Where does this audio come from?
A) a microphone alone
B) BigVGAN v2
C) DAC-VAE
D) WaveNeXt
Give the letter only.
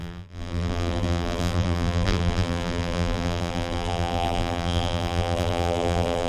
B